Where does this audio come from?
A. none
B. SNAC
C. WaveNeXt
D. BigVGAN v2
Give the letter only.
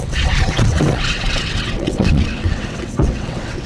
C